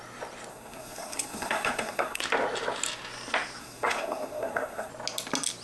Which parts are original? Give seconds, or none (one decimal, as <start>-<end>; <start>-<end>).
0.0-0.5; 2.2-3.6; 4.9-5.6